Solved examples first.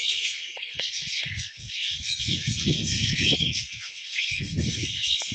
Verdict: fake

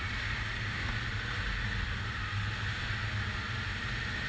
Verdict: real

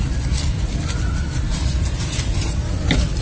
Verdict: real